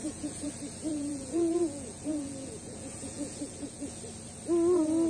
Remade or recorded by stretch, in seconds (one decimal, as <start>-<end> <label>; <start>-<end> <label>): 0.0-0.5 remade; 0.5-0.9 recorded; 0.9-4.0 remade; 4.0-5.1 recorded